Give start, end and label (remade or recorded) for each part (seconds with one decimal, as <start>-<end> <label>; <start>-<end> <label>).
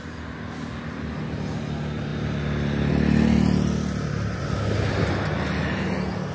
0.0-6.3 recorded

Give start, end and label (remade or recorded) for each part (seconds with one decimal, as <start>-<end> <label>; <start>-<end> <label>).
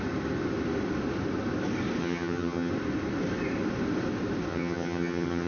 0.0-2.0 recorded; 2.0-2.7 remade; 2.7-4.5 recorded; 4.5-5.5 remade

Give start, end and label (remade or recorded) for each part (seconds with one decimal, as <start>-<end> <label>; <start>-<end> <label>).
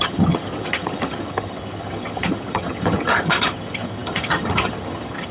0.0-5.3 remade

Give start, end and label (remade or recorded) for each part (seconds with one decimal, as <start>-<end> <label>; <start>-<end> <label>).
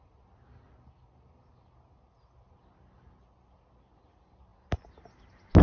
0.0-5.6 recorded